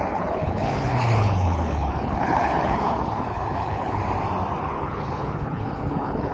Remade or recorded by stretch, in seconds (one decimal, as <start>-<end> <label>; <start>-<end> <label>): 0.0-4.0 remade; 4.0-4.6 recorded; 4.6-6.3 remade